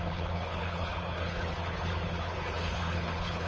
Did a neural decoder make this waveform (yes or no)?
yes